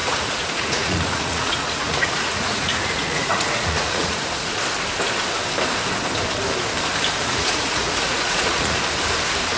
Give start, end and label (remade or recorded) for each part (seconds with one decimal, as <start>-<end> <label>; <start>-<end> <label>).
0.0-4.3 remade; 4.3-7.2 recorded; 7.2-8.8 remade; 8.8-9.6 recorded